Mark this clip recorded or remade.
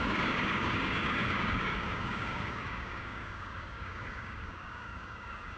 remade